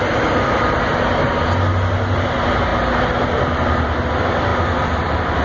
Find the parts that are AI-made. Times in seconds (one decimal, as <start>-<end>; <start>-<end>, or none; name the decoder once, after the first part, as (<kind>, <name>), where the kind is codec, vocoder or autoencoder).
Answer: none